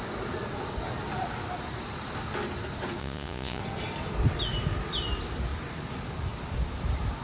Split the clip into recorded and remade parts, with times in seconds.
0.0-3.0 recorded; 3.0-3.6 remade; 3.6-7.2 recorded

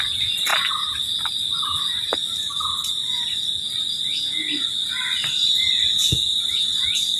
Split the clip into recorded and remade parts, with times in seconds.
0.0-7.2 recorded

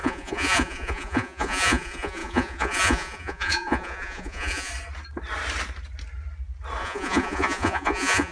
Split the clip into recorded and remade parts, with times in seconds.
0.0-4.7 remade; 4.7-6.8 recorded; 6.8-8.3 remade

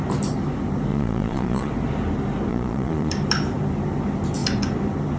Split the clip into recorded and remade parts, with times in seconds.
0.0-0.9 recorded; 0.9-1.7 remade; 1.7-2.5 recorded; 2.5-3.1 remade; 3.1-5.2 recorded